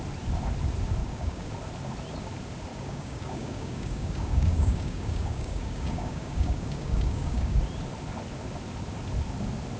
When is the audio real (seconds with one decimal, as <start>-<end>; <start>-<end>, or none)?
0.0-1.0; 1.5-2.7; 7.6-9.8